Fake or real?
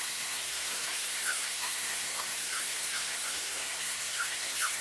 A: fake